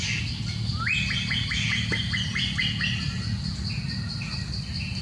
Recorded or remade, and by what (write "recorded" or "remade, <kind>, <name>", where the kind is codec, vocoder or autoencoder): recorded